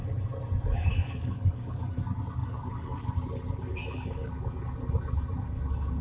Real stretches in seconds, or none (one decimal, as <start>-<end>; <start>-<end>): 0.0-0.9; 2.0-2.4; 3.1-3.8; 4.3-6.0